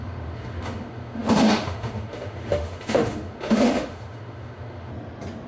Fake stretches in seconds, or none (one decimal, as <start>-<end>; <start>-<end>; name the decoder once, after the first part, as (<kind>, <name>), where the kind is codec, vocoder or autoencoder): 0.0-4.9 (autoencoder, DAC-VAE)